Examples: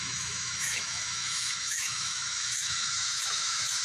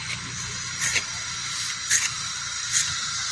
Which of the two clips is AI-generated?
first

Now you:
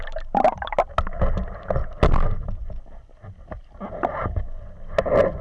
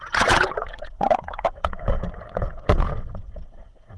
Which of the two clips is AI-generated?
second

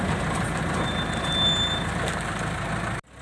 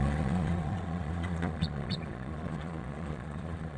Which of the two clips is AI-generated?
second